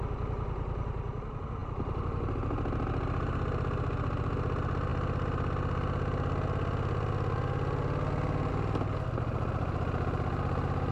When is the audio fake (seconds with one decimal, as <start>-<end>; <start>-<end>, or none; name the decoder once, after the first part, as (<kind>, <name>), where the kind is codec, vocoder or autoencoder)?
none